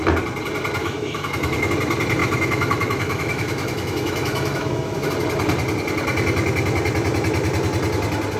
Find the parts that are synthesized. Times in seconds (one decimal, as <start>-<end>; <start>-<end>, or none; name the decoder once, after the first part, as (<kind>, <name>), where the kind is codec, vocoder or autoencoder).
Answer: 0.8-1.7 (autoencoder, DAC-VAE); 2.2-5.1